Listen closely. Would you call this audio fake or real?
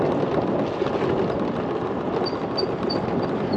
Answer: real